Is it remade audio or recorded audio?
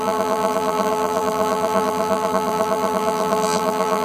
remade